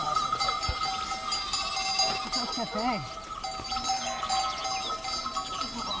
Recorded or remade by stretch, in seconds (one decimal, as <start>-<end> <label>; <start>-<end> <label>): 0.0-0.6 remade; 0.6-6.0 recorded

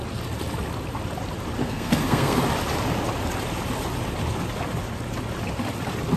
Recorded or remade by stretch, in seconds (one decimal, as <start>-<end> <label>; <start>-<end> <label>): 0.0-1.6 recorded; 1.6-2.4 remade; 2.4-6.2 recorded

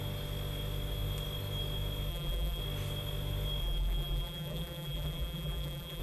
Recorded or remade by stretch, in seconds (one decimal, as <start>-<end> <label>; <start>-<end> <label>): 0.0-2.1 recorded; 2.1-2.6 remade; 2.6-3.6 recorded; 3.6-6.0 remade

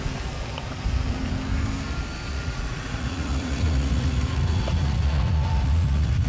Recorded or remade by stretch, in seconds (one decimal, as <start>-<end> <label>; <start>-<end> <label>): 0.0-2.3 recorded; 2.3-6.3 remade

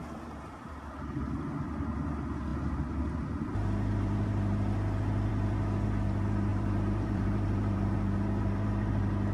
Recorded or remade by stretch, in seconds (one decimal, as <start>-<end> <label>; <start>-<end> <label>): 0.0-6.5 recorded; 6.5-7.9 remade; 7.9-9.3 recorded

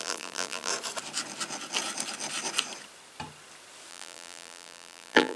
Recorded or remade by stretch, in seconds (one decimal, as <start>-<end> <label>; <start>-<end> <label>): 0.0-0.7 remade; 0.7-3.9 recorded; 3.9-5.4 remade

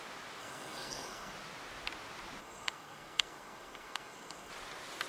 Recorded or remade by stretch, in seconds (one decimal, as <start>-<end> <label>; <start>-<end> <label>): 0.0-0.4 recorded; 0.4-1.3 remade; 1.3-2.4 recorded; 2.4-4.5 remade; 4.5-5.1 recorded

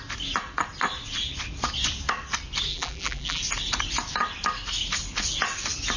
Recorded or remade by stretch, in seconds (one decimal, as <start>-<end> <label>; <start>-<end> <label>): 0.0-2.7 recorded; 2.7-3.4 remade; 3.4-6.0 recorded